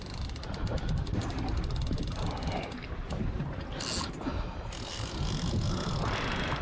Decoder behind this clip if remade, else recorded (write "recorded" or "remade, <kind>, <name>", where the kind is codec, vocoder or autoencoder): recorded